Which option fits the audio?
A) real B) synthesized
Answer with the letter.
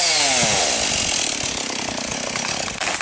A